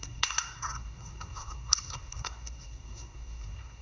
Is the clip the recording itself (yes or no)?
no